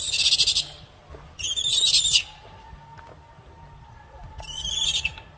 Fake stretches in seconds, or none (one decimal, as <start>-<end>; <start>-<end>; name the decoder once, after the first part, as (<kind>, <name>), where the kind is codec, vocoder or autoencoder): none